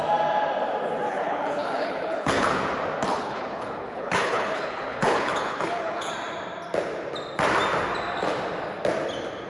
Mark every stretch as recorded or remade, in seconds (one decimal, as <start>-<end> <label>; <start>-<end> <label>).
0.0-1.1 recorded; 1.1-2.5 remade; 2.5-3.1 recorded; 3.1-6.1 remade; 6.1-9.5 recorded